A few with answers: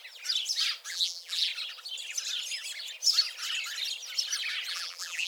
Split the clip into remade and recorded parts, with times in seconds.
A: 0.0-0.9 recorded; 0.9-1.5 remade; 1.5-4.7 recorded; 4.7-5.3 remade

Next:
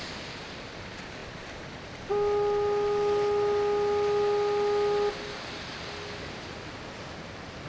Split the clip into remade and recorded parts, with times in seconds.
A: 0.0-7.7 recorded